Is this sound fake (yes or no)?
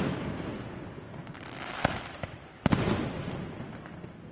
no